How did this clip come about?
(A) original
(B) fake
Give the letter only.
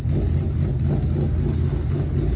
A